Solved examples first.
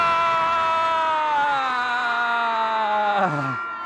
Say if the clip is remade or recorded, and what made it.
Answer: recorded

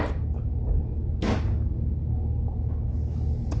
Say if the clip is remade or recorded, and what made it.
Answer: recorded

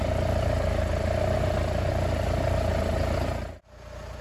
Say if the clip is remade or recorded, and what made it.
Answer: recorded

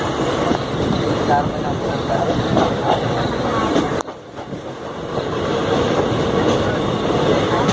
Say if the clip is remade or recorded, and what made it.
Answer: remade, vocoder, BigVGAN v2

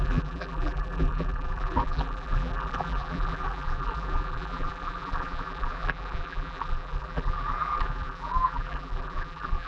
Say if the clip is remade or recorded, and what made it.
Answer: remade, vocoder, BigVGAN v2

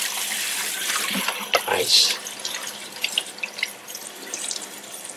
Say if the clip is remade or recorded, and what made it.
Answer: remade, vocoder, BigVGAN v2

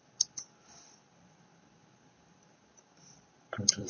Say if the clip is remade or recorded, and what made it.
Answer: remade, vocoder, BigVGAN v2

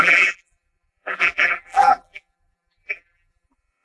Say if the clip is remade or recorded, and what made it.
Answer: remade, vocoder, BigVGAN v2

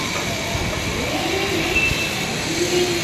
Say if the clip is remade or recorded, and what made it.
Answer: recorded